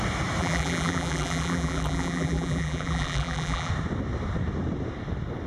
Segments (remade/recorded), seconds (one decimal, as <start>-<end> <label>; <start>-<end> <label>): 0.0-0.4 recorded; 0.4-3.7 remade; 3.7-5.5 recorded